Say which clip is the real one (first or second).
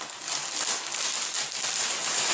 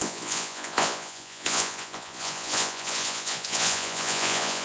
first